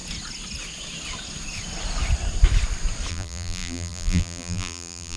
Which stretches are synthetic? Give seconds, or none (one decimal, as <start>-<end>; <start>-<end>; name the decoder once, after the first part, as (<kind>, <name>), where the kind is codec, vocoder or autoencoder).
3.1-5.2 (vocoder, BigVGAN v2)